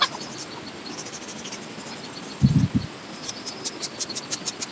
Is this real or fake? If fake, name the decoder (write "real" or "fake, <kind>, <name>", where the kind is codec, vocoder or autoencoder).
real